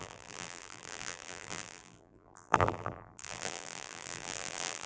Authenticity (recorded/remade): remade